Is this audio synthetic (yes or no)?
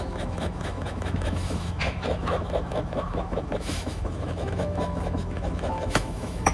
yes